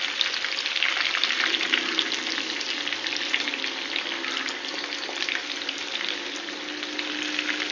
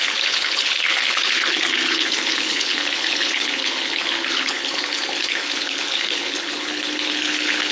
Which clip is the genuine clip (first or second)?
first